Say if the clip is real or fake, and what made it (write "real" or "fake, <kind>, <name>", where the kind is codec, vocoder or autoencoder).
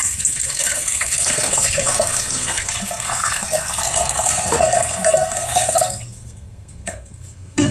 fake, codec, SNAC